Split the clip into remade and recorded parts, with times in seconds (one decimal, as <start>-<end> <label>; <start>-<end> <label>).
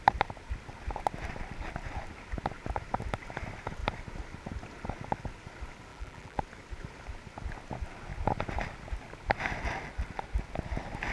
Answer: 0.0-5.9 recorded; 5.9-6.4 remade; 6.4-11.1 recorded